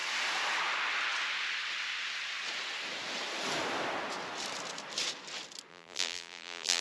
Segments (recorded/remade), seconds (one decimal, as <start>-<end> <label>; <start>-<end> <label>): 0.0-5.7 recorded; 5.7-6.8 remade